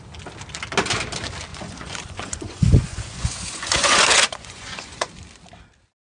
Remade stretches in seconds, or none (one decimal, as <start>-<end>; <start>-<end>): 1.5-5.1